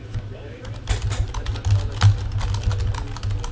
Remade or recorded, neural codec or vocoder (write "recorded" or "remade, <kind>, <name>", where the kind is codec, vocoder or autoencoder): recorded